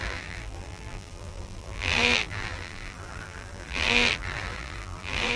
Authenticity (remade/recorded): remade